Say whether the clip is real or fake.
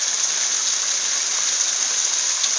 real